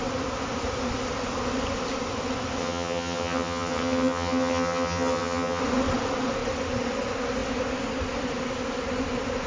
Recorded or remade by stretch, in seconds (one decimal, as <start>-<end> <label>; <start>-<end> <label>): 0.0-2.6 recorded; 2.6-5.6 remade; 5.6-9.5 recorded